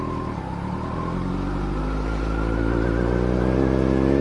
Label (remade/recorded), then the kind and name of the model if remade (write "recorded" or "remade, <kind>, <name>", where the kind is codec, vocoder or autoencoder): recorded